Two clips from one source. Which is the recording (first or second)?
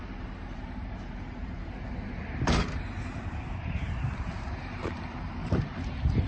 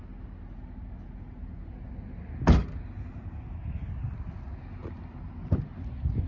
second